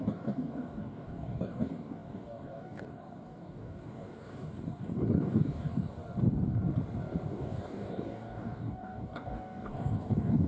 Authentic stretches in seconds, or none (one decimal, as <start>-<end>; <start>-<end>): 6.0-7.3